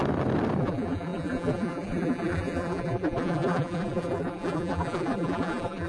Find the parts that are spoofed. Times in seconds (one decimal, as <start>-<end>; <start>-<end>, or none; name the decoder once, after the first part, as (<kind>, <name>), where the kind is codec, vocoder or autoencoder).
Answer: 0.6-5.9 (vocoder, BigVGAN v2)